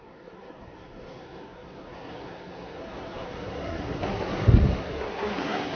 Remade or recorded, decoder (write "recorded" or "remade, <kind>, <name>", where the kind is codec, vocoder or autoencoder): remade, codec, SNAC